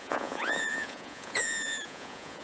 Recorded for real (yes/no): no